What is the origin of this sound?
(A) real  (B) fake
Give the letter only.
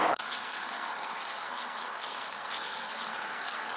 B